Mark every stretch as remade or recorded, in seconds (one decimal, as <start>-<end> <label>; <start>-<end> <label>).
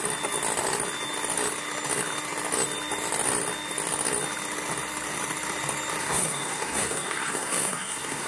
0.0-6.0 recorded; 6.0-8.3 remade